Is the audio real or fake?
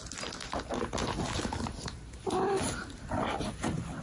real